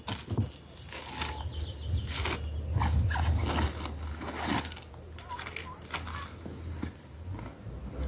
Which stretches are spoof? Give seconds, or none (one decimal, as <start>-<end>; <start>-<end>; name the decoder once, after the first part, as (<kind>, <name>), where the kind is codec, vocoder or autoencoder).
none